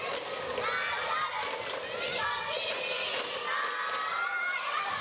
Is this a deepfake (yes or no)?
no